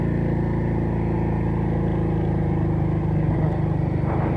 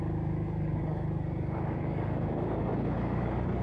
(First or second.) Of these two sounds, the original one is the first